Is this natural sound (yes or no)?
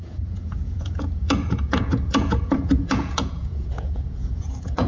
no